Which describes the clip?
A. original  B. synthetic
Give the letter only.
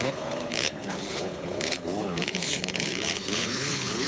B